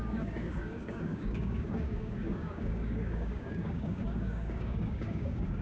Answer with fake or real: fake